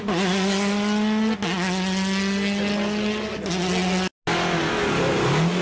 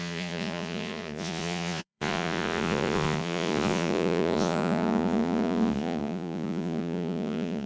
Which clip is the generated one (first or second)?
second